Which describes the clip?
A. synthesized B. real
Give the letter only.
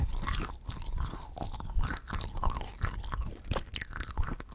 B